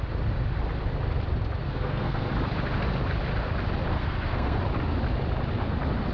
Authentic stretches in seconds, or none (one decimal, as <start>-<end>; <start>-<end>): 0.0-1.6; 2.3-3.9; 4.6-6.1